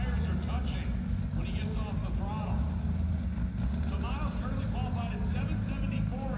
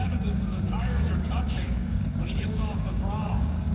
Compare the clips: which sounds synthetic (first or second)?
second